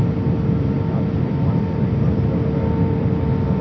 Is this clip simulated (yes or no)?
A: no